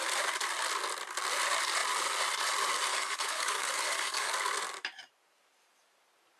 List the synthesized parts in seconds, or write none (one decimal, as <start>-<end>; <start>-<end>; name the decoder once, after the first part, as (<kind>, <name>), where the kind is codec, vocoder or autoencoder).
2.9-4.3 (codec, DAC)